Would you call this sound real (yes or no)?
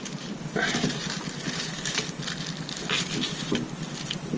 yes